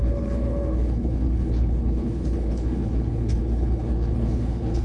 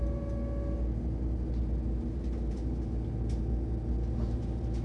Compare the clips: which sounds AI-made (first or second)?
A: first